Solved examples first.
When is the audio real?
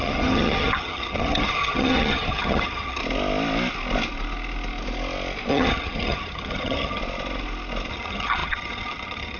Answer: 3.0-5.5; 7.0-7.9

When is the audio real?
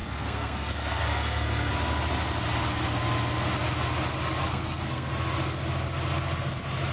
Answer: 1.7-4.4; 5.1-6.9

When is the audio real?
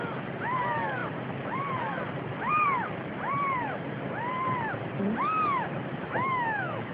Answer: 0.0-6.0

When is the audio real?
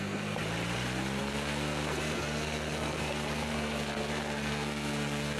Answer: 0.4-1.2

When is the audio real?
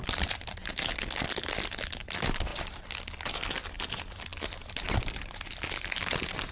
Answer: 0.0-6.5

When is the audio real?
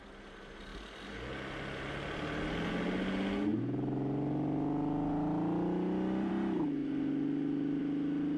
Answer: 0.0-8.4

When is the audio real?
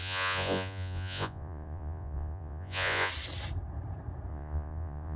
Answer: 3.1-4.3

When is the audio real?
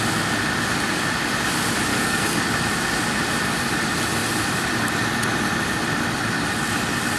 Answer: 0.0-1.9; 2.4-7.2